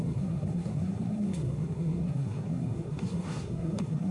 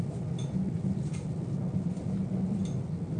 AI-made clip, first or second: first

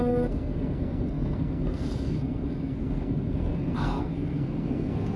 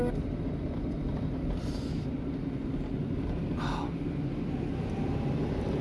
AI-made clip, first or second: first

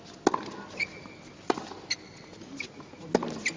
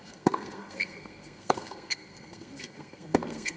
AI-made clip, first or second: second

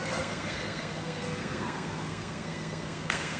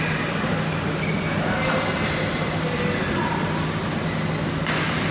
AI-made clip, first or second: first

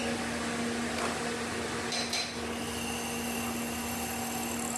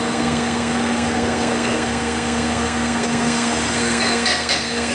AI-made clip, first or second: second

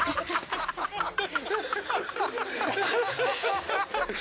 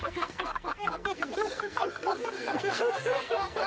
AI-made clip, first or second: second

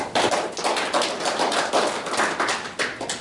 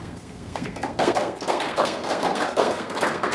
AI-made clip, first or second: second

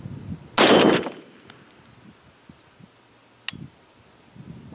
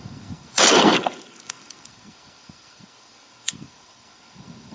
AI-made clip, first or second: second